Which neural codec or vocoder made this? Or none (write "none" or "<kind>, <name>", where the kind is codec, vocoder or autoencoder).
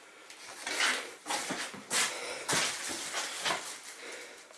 none